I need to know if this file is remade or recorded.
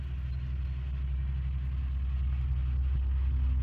recorded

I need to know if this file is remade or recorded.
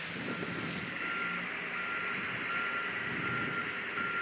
recorded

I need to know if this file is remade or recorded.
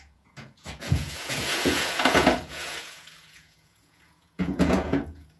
remade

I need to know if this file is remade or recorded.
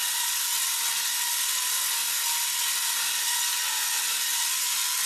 recorded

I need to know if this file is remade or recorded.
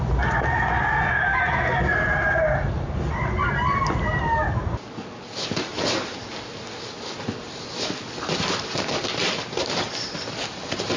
recorded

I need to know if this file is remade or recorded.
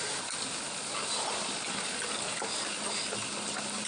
recorded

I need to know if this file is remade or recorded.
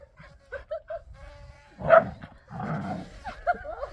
recorded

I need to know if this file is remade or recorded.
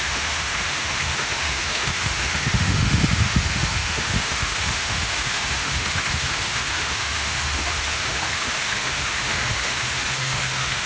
remade